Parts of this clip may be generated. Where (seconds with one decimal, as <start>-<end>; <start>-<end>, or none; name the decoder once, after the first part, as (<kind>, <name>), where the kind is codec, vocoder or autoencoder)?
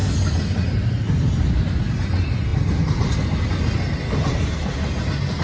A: none